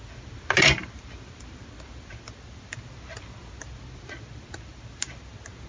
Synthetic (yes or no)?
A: no